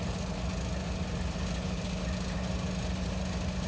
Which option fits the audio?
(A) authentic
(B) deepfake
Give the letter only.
A